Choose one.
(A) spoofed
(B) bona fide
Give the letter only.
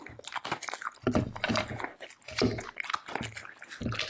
B